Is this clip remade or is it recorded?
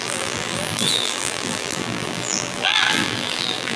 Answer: remade